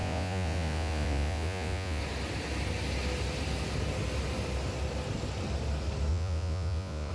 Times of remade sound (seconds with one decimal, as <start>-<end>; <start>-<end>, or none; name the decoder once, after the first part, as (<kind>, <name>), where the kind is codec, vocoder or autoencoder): 0.0-2.0 (vocoder, Vocos); 6.1-7.1